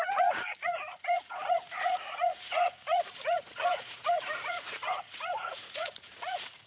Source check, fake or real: fake